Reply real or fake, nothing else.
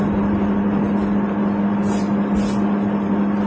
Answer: real